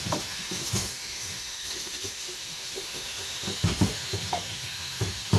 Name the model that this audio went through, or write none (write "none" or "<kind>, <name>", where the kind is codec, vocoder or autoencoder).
autoencoder, DAC-VAE